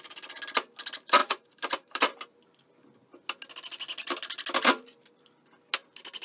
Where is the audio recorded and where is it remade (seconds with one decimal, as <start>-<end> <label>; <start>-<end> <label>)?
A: 0.0-1.2 recorded; 1.2-2.0 remade; 2.0-6.2 recorded